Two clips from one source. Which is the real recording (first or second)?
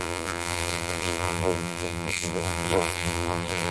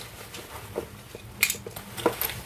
second